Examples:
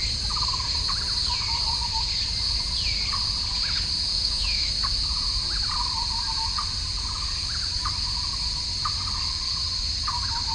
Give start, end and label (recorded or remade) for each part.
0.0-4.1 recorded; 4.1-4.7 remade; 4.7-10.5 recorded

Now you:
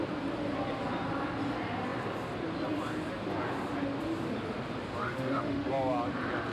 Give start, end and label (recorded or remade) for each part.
0.0-5.0 recorded; 5.0-5.7 remade; 5.7-6.5 recorded

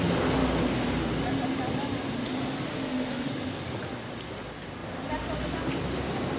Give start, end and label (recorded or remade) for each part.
0.0-2.7 recorded; 2.7-3.3 remade; 3.3-6.4 recorded

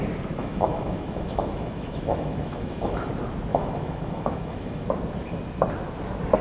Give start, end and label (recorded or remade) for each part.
0.0-0.4 recorded; 0.4-3.1 remade; 3.1-3.5 recorded; 3.5-4.9 remade; 4.9-6.4 recorded

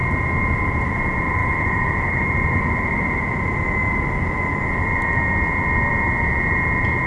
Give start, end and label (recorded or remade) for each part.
0.0-1.4 recorded; 1.4-2.3 remade; 2.3-7.1 recorded

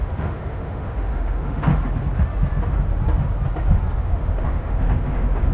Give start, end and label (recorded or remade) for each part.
0.0-1.7 remade; 1.7-4.0 recorded; 4.0-5.5 remade